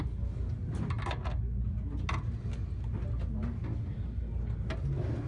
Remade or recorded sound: recorded